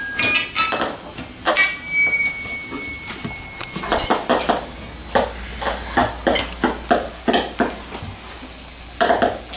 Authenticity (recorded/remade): recorded